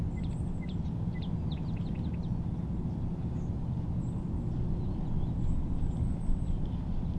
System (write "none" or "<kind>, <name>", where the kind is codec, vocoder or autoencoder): none